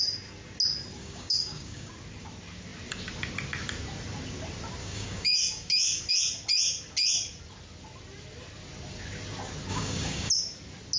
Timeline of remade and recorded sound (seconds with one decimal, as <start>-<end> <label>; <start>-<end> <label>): 0.0-1.0 recorded; 1.0-1.9 remade; 1.9-4.8 recorded; 4.8-6.1 remade; 6.1-9.7 recorded; 9.7-10.3 remade; 10.3-11.0 recorded